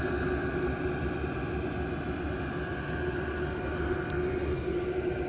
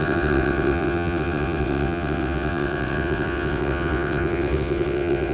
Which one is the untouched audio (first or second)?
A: first